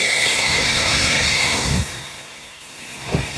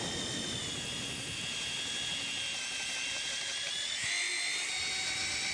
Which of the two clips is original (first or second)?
second